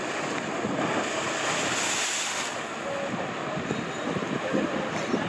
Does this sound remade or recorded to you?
recorded